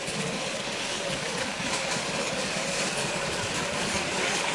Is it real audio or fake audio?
fake